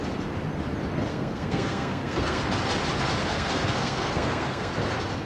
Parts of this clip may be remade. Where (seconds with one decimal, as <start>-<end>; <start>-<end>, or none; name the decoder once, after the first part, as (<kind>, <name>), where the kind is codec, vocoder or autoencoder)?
1.1-2.4 (codec, SNAC); 3.2-4.7